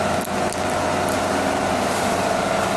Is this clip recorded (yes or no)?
yes